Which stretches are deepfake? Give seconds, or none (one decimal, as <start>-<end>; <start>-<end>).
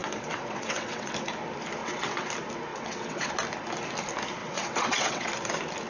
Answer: 0.0-1.1; 1.8-2.3; 2.7-3.3; 4.4-5.3